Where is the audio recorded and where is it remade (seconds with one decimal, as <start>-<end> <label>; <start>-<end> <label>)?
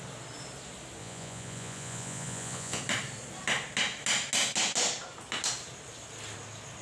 0.0-1.0 recorded; 1.0-2.8 remade; 2.8-6.8 recorded